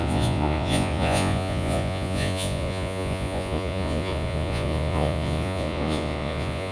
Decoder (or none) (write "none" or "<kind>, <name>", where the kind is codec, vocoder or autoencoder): vocoder, Vocos